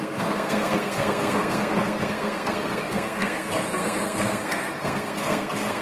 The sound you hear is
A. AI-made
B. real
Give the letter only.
A